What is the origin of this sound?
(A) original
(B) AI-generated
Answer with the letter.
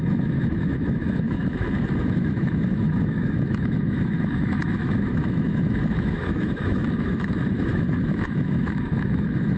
B